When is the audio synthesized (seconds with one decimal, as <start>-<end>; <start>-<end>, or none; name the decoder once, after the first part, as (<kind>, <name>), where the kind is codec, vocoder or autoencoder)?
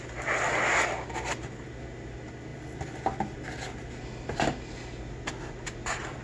none